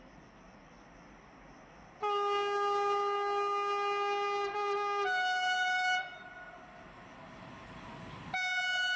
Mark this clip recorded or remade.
recorded